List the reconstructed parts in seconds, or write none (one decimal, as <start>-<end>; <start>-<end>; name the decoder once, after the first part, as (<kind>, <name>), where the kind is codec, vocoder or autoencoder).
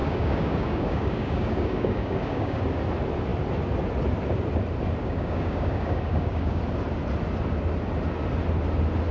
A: 0.0-2.6 (codec, DAC); 5.0-6.6